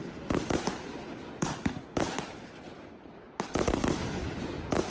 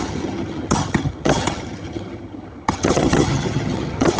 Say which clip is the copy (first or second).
second